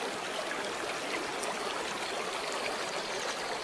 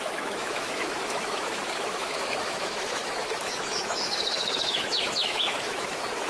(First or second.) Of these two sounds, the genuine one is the first